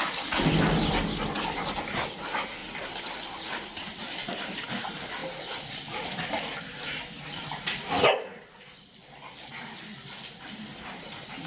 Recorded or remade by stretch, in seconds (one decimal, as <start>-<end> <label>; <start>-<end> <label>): 0.0-11.5 recorded